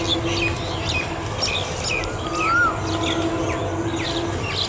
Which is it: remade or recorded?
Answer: recorded